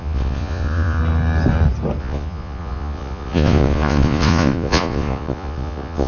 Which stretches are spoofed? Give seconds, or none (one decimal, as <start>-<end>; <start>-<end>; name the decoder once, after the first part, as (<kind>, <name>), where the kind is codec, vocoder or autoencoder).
0.0-1.0 (vocoder, Vocos); 2.0-6.1